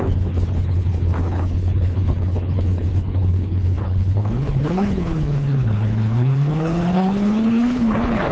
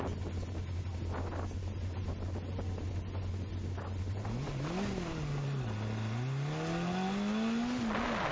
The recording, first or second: second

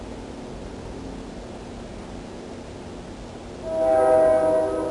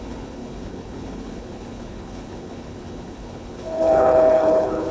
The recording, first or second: first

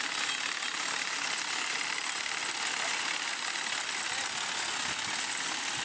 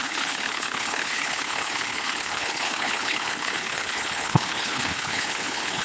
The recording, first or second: first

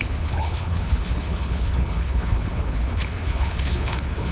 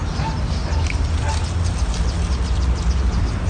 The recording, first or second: second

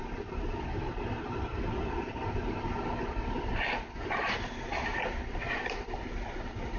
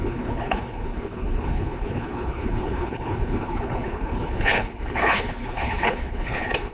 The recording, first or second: first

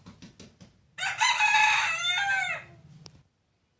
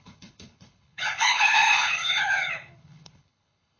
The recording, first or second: first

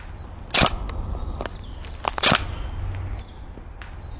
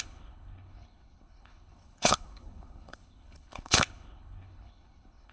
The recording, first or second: first